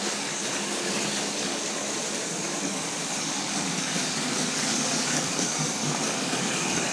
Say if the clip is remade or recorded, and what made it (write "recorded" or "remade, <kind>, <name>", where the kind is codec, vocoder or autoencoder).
remade, codec, DAC